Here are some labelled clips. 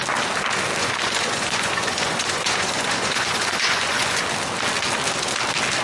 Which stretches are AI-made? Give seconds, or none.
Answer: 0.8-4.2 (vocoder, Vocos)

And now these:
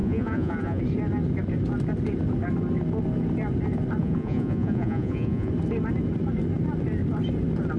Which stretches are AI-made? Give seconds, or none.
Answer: 0.0-0.8 (vocoder, Vocos); 4.0-5.5

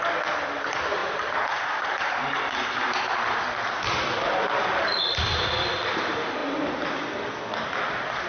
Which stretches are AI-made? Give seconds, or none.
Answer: 1.0-3.4 (vocoder, BigVGAN v2)